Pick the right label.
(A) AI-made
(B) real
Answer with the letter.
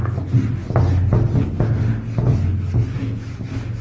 B